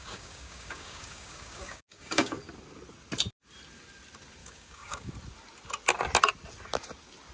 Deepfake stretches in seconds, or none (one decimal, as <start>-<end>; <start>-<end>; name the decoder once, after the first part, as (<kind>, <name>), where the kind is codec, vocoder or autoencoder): 0.0-2.4 (codec, DAC); 4.4-5.1